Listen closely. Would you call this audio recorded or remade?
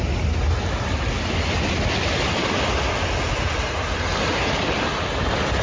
recorded